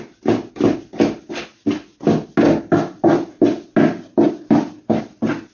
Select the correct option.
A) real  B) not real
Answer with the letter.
A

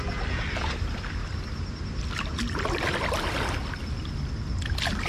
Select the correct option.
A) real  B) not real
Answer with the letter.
A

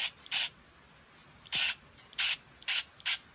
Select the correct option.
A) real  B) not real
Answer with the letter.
A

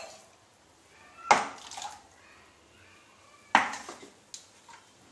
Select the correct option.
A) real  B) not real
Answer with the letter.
A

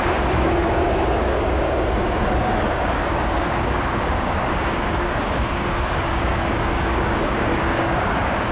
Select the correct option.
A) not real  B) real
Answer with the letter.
A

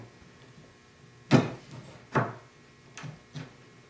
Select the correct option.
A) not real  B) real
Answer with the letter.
B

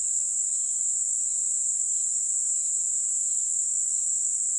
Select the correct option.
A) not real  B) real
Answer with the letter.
B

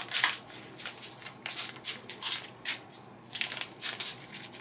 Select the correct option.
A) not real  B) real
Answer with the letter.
B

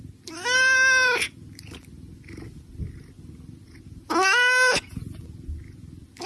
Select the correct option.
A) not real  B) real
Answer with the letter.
B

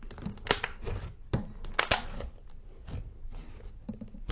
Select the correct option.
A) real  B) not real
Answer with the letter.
A